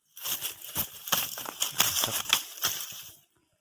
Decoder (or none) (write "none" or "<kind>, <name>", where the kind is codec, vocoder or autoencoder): vocoder, BigVGAN v2